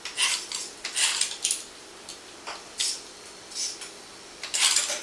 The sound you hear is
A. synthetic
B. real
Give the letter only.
B